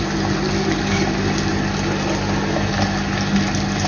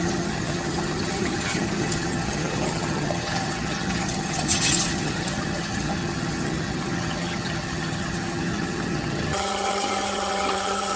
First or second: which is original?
first